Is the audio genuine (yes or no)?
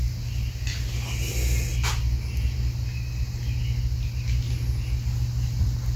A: yes